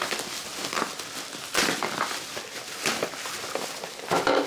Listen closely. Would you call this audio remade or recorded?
recorded